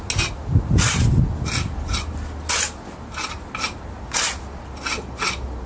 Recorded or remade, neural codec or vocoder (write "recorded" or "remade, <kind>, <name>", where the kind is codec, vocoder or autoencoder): recorded